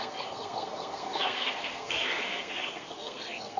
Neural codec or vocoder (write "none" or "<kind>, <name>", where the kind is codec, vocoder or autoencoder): codec, SNAC